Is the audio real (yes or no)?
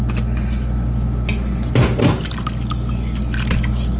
yes